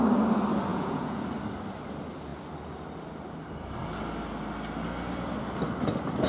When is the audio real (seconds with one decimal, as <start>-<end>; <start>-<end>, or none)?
0.0-0.7; 1.2-6.3